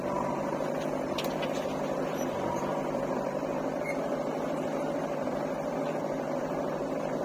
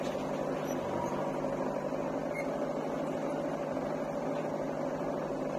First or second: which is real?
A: second